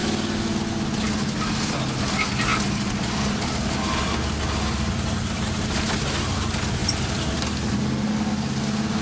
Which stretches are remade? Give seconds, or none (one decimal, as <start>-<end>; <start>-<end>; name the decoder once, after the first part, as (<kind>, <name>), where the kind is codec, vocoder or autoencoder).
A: none